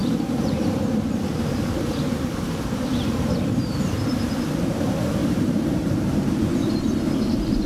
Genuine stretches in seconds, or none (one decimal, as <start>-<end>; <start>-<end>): 4.6-5.2; 6.5-7.7